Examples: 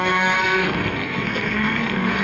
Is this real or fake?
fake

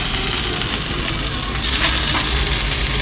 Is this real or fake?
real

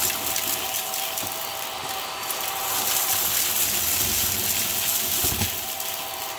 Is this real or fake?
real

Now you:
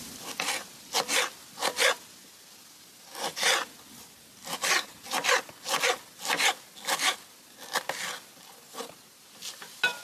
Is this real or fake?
real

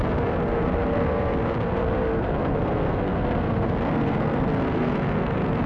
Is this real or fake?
fake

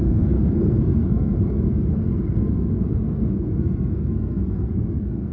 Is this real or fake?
fake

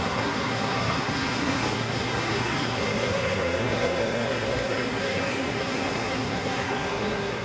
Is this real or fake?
fake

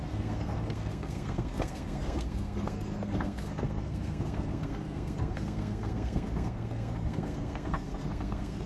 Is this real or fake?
fake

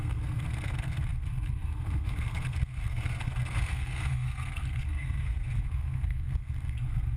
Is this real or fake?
fake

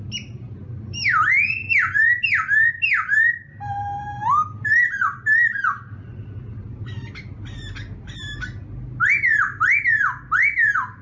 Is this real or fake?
real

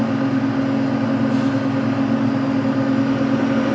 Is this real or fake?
real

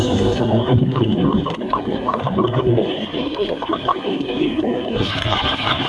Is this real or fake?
fake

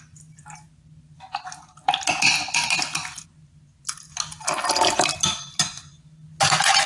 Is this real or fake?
real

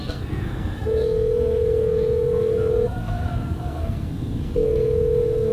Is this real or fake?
fake